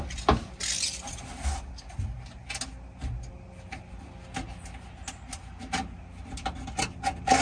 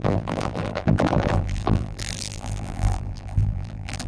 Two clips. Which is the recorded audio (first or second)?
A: first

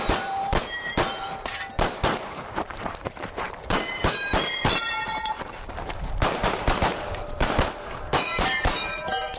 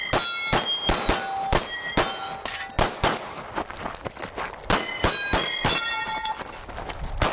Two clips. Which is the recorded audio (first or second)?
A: second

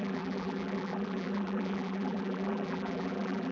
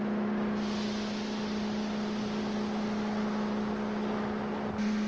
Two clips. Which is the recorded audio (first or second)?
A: second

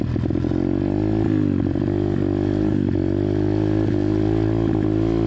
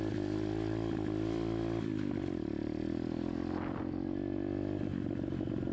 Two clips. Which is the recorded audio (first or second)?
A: first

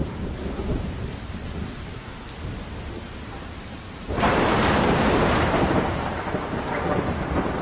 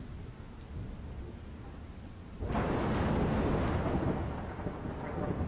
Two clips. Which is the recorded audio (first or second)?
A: second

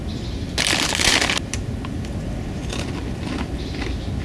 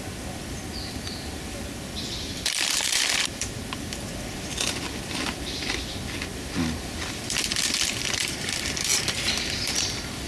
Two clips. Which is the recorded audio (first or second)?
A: first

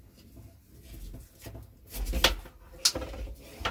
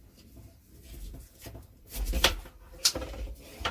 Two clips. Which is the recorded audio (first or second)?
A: first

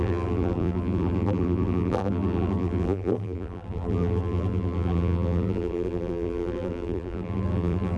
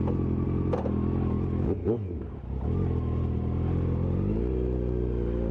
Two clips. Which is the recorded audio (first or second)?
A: second